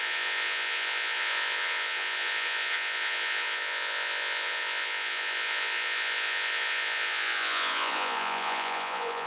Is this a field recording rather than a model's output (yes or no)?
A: no